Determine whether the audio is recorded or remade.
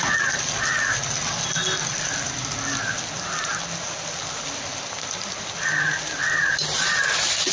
recorded